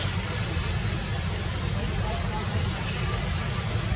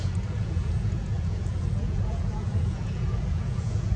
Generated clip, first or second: second